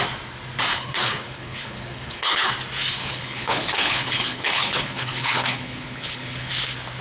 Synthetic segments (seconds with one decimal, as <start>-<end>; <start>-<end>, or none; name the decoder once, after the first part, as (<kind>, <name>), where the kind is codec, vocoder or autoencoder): 0.7-2.5 (codec, HILCodec); 3.0-6.5